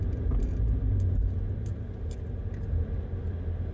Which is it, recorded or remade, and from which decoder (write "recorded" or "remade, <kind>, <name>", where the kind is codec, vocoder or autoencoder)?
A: recorded